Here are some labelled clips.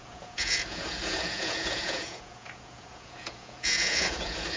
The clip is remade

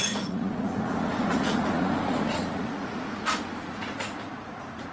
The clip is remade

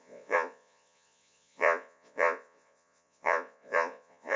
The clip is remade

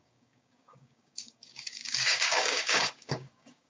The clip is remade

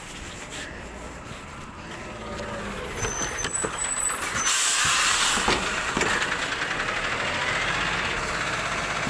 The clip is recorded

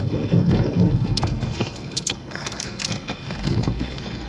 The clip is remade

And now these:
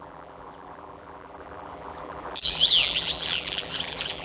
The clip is remade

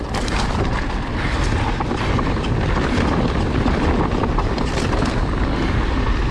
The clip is recorded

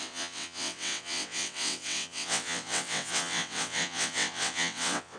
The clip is remade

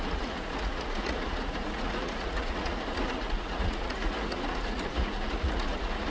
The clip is remade